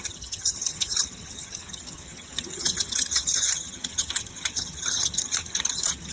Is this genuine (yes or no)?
no